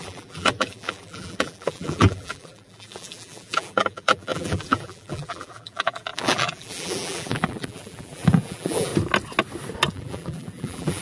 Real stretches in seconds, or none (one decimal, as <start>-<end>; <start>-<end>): 8.9-9.9